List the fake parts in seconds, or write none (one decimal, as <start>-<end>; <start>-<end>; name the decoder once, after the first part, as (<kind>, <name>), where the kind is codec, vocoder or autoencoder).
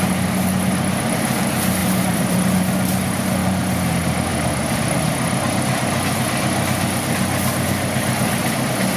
1.8-2.6 (vocoder, BigVGAN v2); 3.4-3.9; 4.3-5.0